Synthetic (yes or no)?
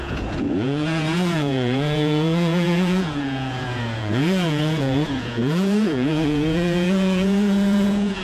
yes